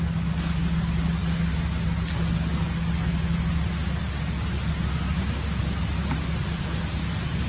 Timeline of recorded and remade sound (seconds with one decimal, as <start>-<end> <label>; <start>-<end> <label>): 0.0-0.6 recorded; 0.6-1.4 remade; 1.4-7.5 recorded